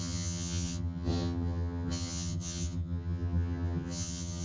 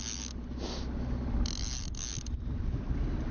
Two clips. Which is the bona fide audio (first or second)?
second